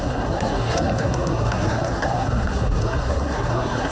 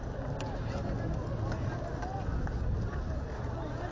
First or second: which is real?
second